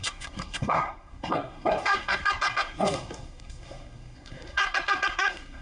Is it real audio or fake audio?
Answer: fake